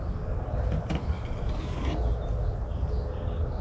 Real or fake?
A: real